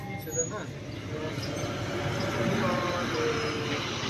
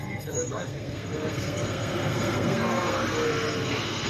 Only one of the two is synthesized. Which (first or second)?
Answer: second